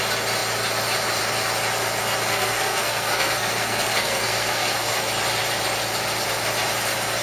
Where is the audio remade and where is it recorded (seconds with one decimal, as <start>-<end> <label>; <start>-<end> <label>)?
0.0-2.3 recorded; 2.3-5.1 remade; 5.1-7.2 recorded